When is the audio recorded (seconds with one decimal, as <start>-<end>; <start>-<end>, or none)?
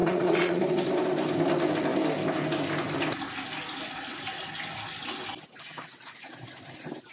0.6-7.1